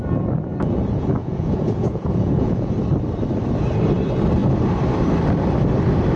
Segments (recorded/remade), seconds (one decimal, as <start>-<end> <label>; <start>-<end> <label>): 0.0-1.2 recorded; 1.2-2.7 remade; 2.7-6.2 recorded